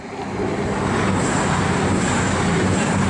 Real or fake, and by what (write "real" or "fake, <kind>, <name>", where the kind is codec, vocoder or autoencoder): real